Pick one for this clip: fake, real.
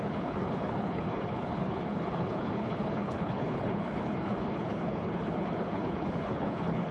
fake